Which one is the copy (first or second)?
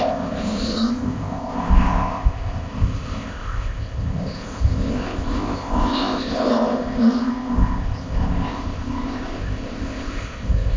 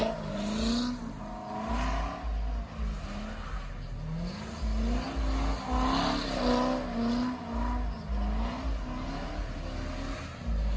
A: first